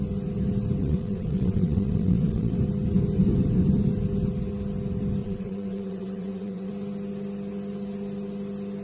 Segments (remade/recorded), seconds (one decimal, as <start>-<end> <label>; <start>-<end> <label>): 0.0-0.8 recorded; 0.8-2.5 remade; 2.5-5.2 recorded; 5.2-6.7 remade; 6.7-8.8 recorded